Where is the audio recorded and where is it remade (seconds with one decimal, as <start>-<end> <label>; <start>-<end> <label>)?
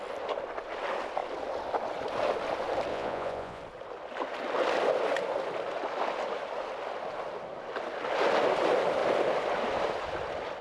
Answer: 0.0-2.9 recorded; 2.9-3.6 remade; 3.6-10.6 recorded